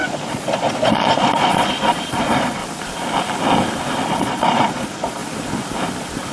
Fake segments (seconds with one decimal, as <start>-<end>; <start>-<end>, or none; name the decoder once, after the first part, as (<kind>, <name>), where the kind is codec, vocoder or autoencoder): 0.0-2.6 (vocoder, Vocos); 4.1-5.2